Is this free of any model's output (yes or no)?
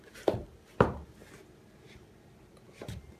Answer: yes